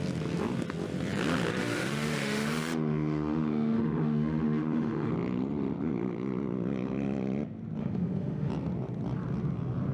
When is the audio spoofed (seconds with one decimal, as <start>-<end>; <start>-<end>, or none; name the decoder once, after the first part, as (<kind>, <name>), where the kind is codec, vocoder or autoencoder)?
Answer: 1.5-5.1 (autoencoder, DAC-VAE); 7.8-8.5